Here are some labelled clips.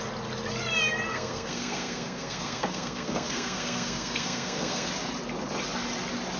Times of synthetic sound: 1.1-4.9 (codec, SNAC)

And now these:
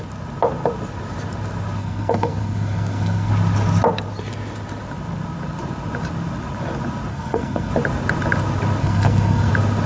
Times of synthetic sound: 1.8-3.3 (codec, SNAC); 7.1-7.7; 8.8-9.5

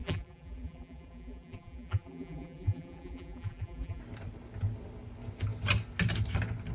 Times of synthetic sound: 0.0-4.0 (vocoder, BigVGAN v2)

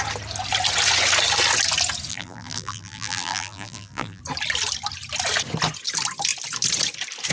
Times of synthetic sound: 2.1-4.2 (vocoder, BigVGAN v2)

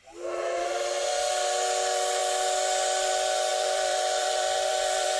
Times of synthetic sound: 3.5-5.2 (vocoder, BigVGAN v2)

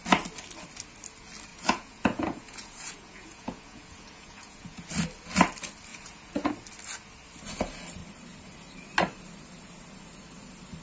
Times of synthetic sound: 1.5-4.9 (vocoder, Vocos); 5.9-6.5

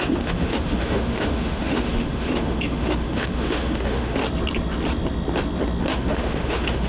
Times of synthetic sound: 0.0-4.2 (autoencoder, DAC-VAE); 5.8-6.9